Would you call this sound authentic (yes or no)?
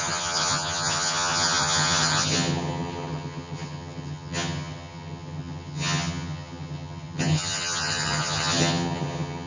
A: no